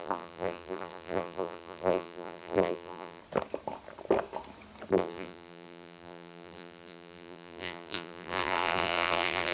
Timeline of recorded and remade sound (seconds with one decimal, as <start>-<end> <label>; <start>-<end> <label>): 0.0-3.2 remade; 3.2-4.9 recorded; 4.9-9.5 remade